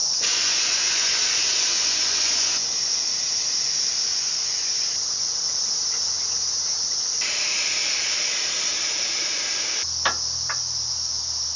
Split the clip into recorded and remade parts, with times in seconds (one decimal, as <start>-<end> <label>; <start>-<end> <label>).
0.0-3.0 remade; 3.0-4.1 recorded; 4.1-4.9 remade; 4.9-11.6 recorded